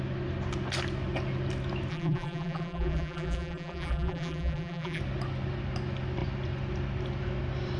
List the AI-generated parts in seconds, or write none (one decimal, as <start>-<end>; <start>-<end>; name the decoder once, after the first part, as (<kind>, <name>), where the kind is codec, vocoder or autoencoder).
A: 1.9-5.0 (vocoder, BigVGAN v2)